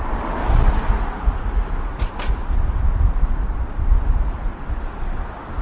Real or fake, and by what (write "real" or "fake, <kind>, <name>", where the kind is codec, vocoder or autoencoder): real